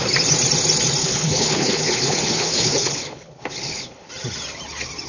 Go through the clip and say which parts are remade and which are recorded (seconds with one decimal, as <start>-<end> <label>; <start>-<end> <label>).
0.0-1.0 recorded; 1.0-4.1 remade; 4.1-5.1 recorded